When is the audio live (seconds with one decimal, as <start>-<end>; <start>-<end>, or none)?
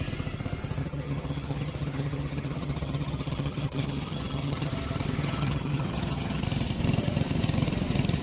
0.0-0.8; 4.7-5.2; 6.4-8.2